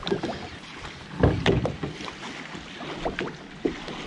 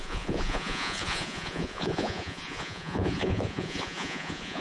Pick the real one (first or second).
first